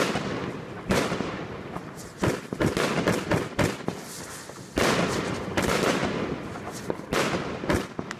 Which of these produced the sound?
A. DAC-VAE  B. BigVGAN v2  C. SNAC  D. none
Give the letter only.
D